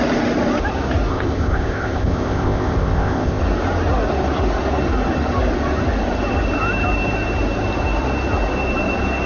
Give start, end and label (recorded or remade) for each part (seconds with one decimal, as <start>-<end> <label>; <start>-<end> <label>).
0.0-1.1 recorded; 1.1-3.4 remade; 3.4-9.3 recorded